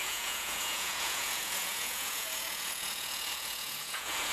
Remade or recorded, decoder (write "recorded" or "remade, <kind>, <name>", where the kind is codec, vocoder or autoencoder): remade, vocoder, Vocos